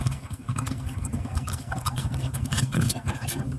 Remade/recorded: remade